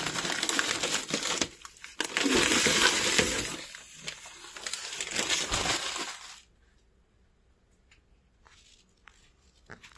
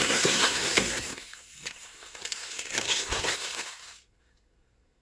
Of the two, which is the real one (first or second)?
first